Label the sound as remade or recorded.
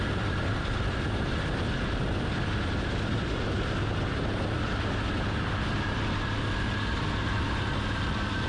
recorded